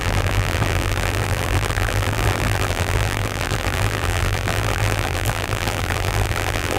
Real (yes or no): no